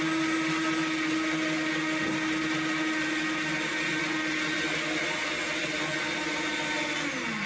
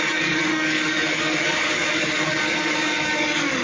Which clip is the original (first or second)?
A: first